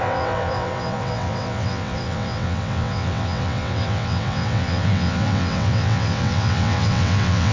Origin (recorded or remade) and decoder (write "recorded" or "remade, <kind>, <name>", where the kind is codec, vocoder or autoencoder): remade, vocoder, WaveNeXt